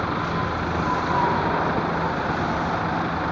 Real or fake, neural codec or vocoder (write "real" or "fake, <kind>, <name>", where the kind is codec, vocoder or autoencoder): real